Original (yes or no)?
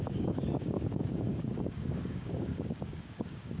no